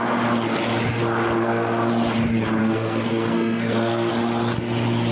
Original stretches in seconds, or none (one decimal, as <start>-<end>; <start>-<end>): 0.0-1.4; 1.9-2.6; 4.1-5.1